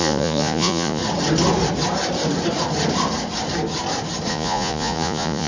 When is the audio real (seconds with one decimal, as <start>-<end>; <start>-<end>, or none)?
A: 1.0-4.3